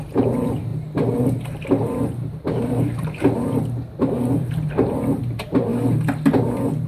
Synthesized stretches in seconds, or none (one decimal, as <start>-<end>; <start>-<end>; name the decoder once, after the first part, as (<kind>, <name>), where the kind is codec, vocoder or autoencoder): 0.0-0.7 (vocoder, BigVGAN v2); 1.2-5.7